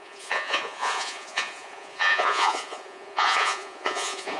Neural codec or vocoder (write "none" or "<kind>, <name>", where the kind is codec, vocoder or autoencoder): vocoder, Vocos